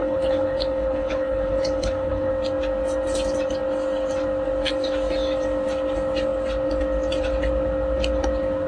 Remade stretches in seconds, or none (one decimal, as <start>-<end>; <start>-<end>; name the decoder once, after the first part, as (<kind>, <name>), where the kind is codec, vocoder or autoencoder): 0.0-2.3 (codec, HILCodec)